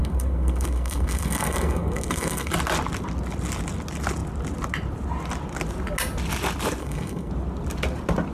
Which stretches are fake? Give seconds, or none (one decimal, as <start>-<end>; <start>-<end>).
0.0-2.5; 6.8-7.3